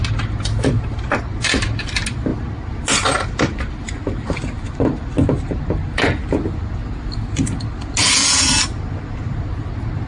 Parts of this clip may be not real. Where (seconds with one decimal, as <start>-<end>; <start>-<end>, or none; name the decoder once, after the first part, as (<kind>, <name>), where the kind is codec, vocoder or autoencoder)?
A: 8.0-8.5 (vocoder, Vocos)